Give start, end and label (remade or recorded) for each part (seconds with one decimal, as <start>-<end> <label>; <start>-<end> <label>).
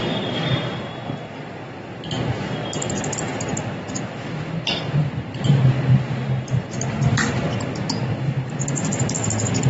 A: 0.0-9.7 recorded